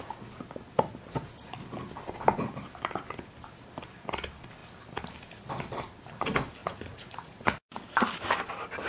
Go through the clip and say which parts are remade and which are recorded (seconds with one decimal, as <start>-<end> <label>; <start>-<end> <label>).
0.0-6.6 recorded; 6.6-7.7 remade; 7.7-8.9 recorded

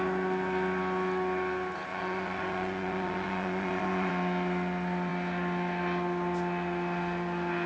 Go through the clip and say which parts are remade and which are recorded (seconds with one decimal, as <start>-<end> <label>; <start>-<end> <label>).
0.0-1.9 recorded; 1.9-4.1 remade; 4.1-7.7 recorded

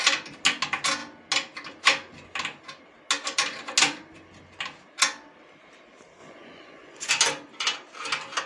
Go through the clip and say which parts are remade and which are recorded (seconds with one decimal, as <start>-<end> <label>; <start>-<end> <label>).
0.0-6.2 recorded; 6.2-7.1 remade; 7.1-8.5 recorded